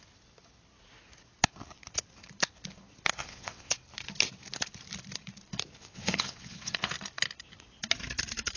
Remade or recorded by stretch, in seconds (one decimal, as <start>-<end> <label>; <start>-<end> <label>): 0.0-3.2 recorded; 3.2-3.7 remade; 3.7-5.8 recorded; 5.8-6.9 remade; 6.9-8.6 recorded